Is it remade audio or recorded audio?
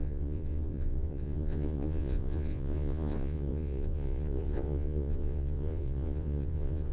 remade